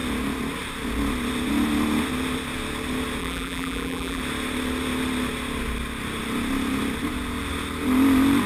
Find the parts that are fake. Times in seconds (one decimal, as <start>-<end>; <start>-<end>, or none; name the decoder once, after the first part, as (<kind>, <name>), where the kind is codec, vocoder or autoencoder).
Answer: 3.2-4.2 (vocoder, BigVGAN v2)